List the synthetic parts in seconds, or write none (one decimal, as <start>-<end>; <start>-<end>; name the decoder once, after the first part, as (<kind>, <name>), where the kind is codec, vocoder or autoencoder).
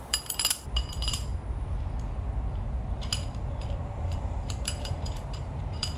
0.0-1.3 (vocoder, BigVGAN v2); 4.0-6.0